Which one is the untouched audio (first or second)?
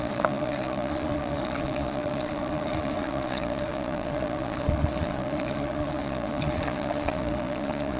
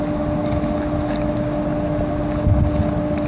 second